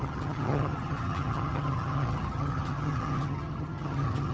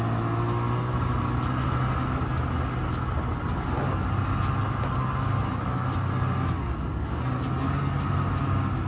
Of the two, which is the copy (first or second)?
first